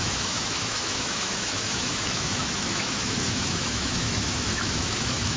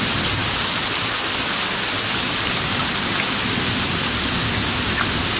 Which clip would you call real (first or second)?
second